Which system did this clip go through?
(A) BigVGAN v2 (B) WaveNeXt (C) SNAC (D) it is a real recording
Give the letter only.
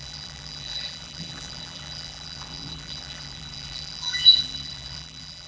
A